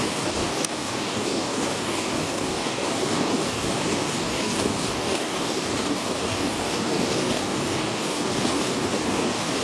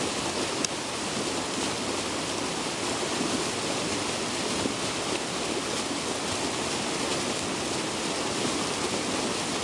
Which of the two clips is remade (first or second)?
first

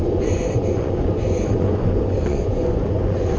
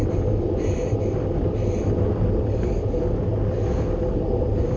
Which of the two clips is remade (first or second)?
first